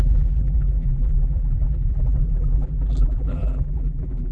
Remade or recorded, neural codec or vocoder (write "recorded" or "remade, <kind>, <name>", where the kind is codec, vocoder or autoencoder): remade, vocoder, BigVGAN v2